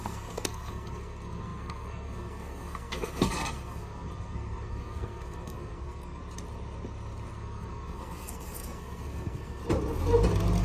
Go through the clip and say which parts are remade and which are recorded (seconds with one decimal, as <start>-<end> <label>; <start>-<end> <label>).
0.0-6.2 remade; 6.2-7.3 recorded; 7.3-9.6 remade; 9.6-10.6 recorded